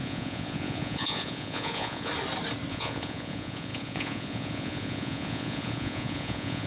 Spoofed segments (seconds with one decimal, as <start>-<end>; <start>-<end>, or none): 0.0-2.1; 2.7-6.7